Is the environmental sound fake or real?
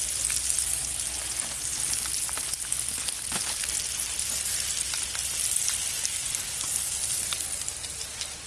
real